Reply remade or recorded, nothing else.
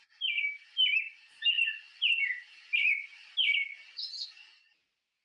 recorded